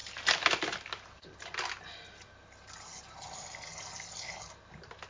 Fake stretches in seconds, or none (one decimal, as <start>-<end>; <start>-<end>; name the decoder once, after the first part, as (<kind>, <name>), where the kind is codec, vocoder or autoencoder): none